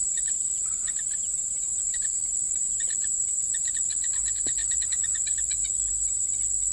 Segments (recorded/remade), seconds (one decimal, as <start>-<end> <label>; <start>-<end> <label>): 0.0-6.7 recorded